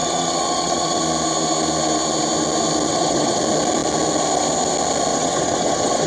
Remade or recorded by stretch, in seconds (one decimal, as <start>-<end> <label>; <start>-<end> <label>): 0.0-1.0 remade; 1.0-2.9 recorded; 2.9-3.4 remade; 3.4-5.1 recorded; 5.1-6.1 remade